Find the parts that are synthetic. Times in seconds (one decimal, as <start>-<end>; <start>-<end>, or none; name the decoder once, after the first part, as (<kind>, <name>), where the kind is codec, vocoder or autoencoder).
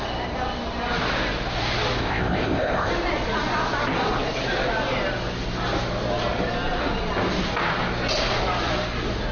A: 2.0-2.9 (codec, ZipCodec)